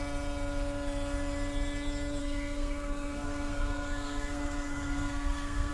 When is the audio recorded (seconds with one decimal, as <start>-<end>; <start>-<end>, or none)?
0.0-2.2